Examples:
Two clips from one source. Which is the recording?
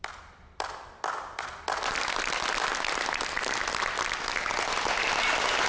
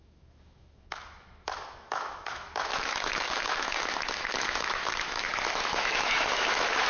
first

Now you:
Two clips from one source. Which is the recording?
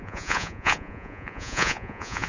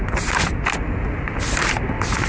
second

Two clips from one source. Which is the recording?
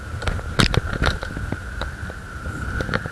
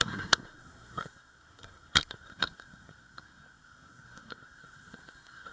first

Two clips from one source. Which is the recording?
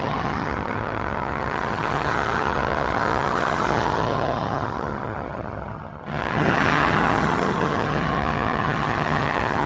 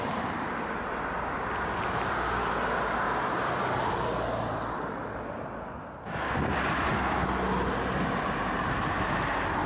second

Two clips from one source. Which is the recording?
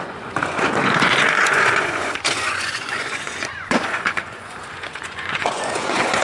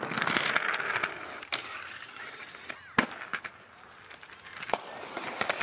second